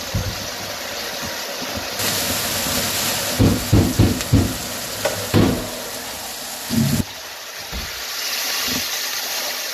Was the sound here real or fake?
real